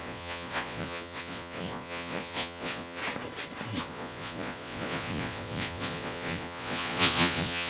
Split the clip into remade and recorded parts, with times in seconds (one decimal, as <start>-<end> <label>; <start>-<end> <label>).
0.0-3.0 remade; 3.0-3.8 recorded; 3.8-7.7 remade